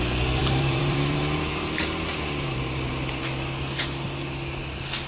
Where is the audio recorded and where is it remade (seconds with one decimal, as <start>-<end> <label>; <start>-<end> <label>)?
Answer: 0.0-0.4 recorded; 0.4-2.9 remade; 2.9-5.1 recorded